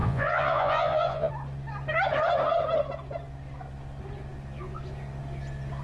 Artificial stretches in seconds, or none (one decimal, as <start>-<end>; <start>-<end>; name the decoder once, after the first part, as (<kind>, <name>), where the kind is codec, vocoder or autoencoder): 0.0-1.3 (vocoder, Vocos)